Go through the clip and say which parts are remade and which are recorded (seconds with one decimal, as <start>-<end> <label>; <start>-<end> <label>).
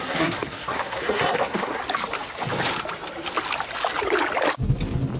0.0-1.8 remade; 1.8-5.2 recorded